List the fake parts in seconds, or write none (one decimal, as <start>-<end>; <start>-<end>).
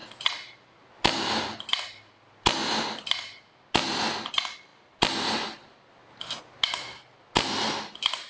none